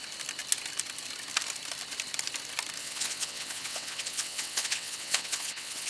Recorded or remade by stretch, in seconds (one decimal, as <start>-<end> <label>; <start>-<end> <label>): 0.0-2.8 recorded; 2.8-5.9 remade